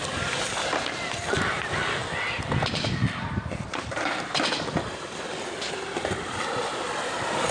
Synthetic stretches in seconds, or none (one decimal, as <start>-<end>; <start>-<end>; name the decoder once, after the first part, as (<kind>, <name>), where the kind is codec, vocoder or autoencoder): 0.0-7.5 (vocoder, BigVGAN v2)